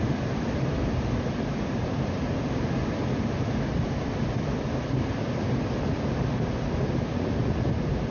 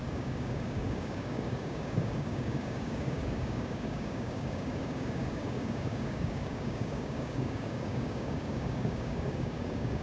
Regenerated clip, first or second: second